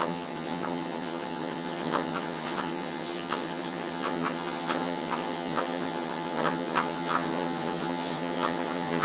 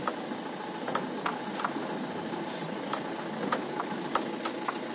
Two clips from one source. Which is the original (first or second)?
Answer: second